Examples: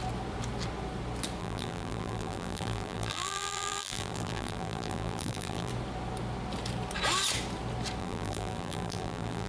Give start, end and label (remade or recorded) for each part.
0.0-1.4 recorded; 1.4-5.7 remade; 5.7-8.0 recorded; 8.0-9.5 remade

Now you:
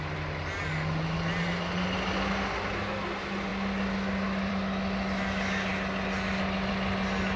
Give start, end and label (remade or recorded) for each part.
0.0-7.4 recorded